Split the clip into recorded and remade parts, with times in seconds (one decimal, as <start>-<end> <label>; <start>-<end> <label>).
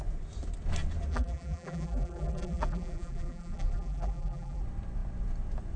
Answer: 0.0-1.1 recorded; 1.1-4.6 remade; 4.6-5.8 recorded